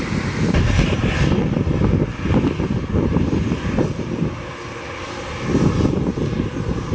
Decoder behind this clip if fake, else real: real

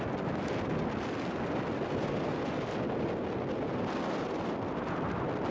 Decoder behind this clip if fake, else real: real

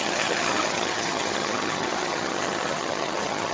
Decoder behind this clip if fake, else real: fake, vocoder, HiFi-GAN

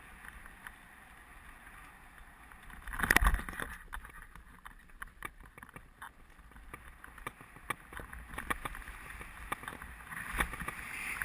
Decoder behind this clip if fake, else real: real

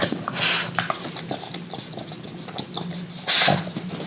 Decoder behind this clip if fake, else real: real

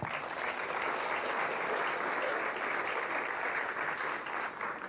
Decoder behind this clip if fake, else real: real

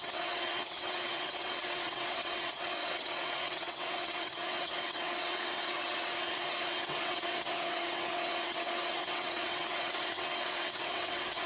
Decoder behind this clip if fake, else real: fake, vocoder, WaveNeXt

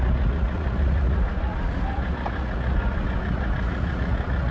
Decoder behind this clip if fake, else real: fake, vocoder, Vocos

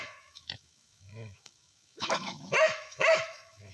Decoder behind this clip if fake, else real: fake, autoencoder, DAC-VAE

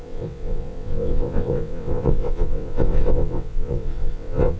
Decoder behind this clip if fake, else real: fake, vocoder, WaveNeXt